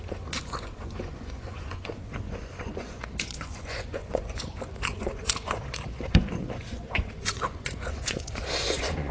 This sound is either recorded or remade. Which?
remade